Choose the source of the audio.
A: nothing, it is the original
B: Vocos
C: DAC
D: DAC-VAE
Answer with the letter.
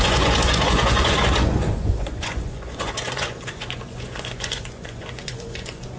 B